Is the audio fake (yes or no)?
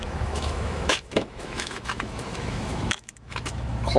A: yes